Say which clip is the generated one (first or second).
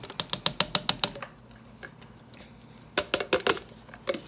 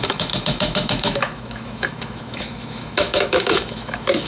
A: second